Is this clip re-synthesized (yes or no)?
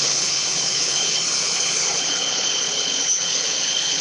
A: yes